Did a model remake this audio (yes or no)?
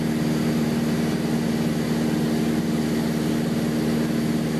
no